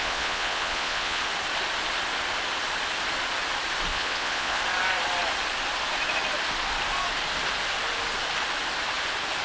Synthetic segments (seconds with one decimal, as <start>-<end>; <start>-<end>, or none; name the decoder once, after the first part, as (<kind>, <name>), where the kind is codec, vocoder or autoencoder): 0.0-1.2 (vocoder, Vocos); 3.9-4.6